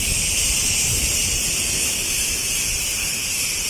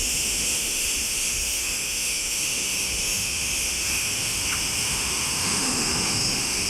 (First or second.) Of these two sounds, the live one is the first